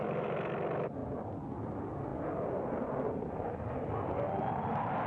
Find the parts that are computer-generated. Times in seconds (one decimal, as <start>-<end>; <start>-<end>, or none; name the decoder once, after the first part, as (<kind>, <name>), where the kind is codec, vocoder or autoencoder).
none